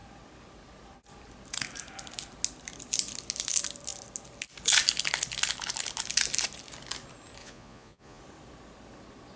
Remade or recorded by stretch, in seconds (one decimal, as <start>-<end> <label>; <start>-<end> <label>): 0.0-7.4 recorded; 7.4-8.2 remade; 8.2-9.4 recorded